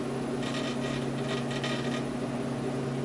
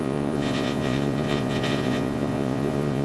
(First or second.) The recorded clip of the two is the first